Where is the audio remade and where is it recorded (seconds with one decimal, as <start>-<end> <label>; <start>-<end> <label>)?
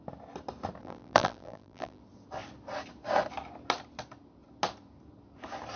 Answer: 0.0-0.8 recorded; 0.8-2.0 remade; 2.0-5.8 recorded